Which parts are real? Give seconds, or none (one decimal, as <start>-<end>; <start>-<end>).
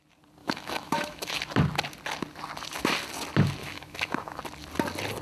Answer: 0.0-0.4; 1.3-3.6; 4.4-5.2